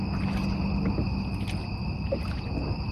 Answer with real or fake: real